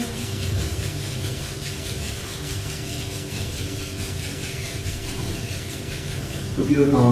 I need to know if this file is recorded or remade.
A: remade